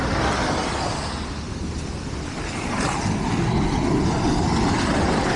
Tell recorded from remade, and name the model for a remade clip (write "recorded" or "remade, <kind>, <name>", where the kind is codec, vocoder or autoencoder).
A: recorded